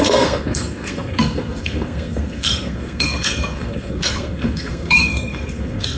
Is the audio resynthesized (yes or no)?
yes